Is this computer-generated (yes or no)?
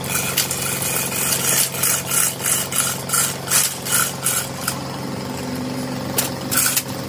no